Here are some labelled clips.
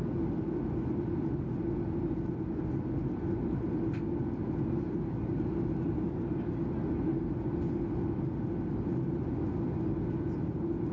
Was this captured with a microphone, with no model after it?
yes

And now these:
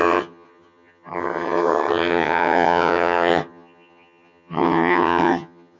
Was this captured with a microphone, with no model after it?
no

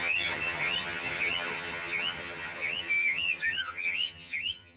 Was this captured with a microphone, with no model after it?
no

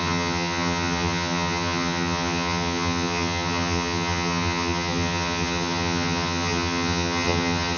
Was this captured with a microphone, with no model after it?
no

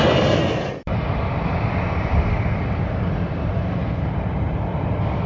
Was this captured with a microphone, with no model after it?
yes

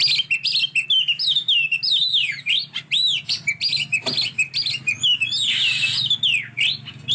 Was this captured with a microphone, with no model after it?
yes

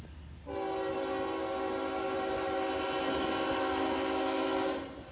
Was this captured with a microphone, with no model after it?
yes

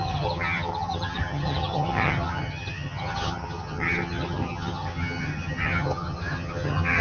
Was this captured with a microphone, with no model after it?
no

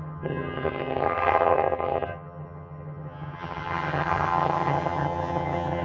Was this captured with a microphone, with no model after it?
no